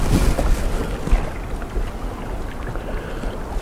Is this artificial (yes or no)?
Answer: no